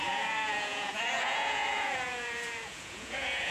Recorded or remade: remade